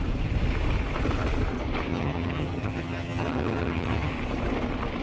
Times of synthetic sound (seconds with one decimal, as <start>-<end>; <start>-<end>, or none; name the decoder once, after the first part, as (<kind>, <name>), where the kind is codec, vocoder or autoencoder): 1.9-4.1 (vocoder, HiFi-GAN)